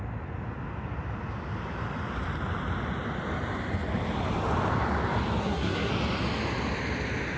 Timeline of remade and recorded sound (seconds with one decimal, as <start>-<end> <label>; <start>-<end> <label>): 0.0-5.4 recorded; 5.4-5.9 remade; 5.9-7.4 recorded